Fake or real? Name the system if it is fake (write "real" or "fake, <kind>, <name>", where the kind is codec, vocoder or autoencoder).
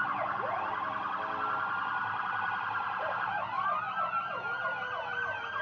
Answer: real